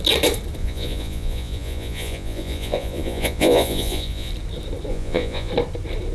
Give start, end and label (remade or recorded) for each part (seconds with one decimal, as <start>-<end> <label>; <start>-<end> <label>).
0.0-0.6 recorded; 0.6-4.3 remade; 4.3-4.9 recorded; 4.9-5.5 remade; 5.5-6.1 recorded